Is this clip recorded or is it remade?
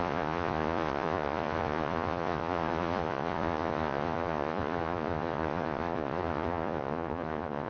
remade